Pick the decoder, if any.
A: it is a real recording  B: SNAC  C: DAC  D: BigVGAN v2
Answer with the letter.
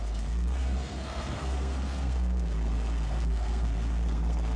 B